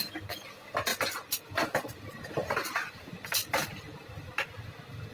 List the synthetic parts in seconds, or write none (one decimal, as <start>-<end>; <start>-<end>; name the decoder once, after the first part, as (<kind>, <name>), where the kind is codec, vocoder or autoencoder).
2.4-3.1 (vocoder, Vocos)